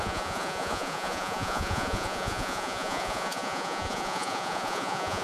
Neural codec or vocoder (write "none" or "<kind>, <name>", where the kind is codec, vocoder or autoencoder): vocoder, Vocos